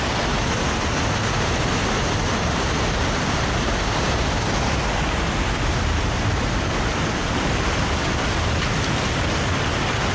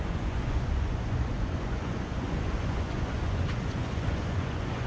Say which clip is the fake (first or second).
second